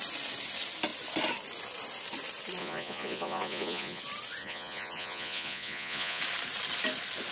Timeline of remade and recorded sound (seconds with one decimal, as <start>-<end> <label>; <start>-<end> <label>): 0.0-2.6 recorded; 2.6-4.0 remade; 4.0-4.4 recorded; 4.4-6.2 remade; 6.2-7.3 recorded